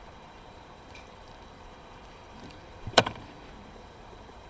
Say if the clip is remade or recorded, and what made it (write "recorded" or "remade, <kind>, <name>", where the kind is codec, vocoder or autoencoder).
remade, vocoder, BigVGAN v2